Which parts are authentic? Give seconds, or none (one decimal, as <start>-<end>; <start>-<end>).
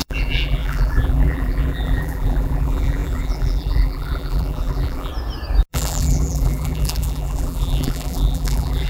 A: 5.1-5.7